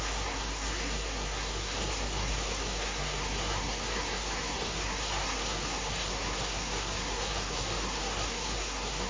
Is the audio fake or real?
fake